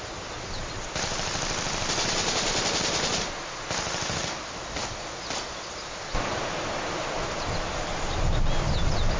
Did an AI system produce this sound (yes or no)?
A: no